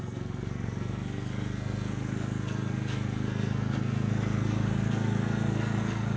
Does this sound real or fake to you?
fake